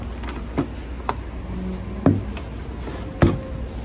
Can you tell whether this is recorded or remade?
recorded